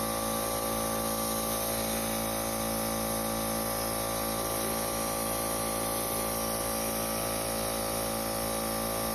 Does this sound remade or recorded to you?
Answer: recorded